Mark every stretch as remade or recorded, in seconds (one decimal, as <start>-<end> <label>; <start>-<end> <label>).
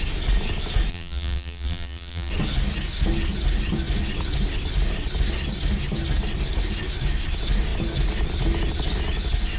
0.0-0.9 recorded; 0.9-2.3 remade; 2.3-9.6 recorded